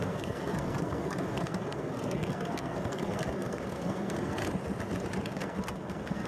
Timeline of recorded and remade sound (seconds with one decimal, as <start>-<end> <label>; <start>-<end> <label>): 0.0-4.4 remade; 4.4-5.3 recorded; 5.3-6.3 remade